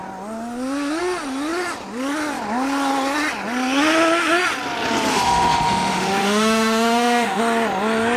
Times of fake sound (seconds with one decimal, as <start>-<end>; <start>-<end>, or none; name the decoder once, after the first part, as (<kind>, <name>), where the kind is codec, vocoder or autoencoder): 5.1-7.4 (autoencoder, DAC-VAE)